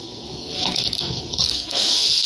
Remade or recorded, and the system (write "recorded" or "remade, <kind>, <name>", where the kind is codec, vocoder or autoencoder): remade, codec, SNAC